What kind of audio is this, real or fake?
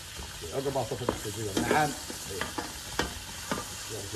real